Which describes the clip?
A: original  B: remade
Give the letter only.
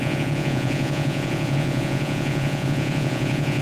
B